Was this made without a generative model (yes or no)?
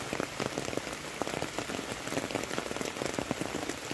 yes